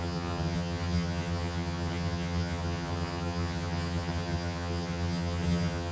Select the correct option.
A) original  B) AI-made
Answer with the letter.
B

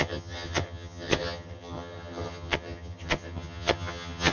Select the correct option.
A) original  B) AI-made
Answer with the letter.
B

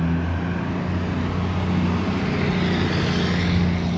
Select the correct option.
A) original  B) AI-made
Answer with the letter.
A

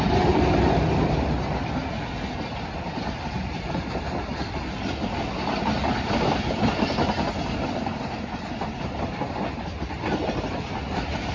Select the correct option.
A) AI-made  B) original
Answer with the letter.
B